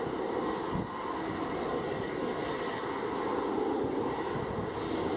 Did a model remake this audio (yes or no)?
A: no